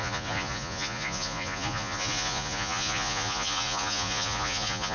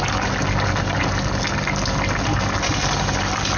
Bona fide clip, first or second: second